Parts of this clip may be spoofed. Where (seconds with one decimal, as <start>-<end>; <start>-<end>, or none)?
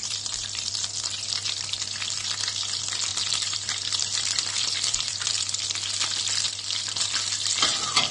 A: 0.0-0.7; 3.1-5.6